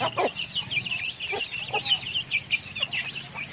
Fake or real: real